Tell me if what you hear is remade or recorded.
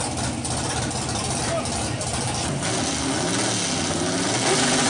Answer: recorded